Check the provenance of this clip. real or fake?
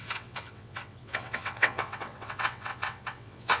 fake